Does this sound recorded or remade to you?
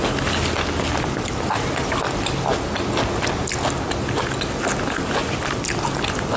recorded